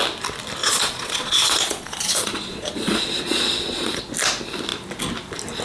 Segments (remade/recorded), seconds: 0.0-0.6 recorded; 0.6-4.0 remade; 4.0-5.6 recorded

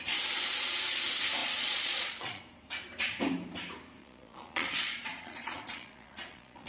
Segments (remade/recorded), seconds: 0.0-1.4 recorded; 1.4-2.4 remade; 2.4-4.0 recorded; 4.0-6.7 remade

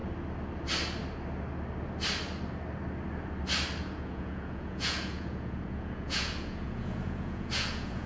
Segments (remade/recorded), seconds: 0.0-3.8 recorded; 3.8-8.1 remade

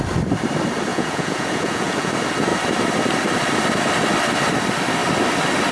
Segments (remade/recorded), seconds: 0.0-0.9 recorded; 0.9-2.1 remade; 2.1-5.7 recorded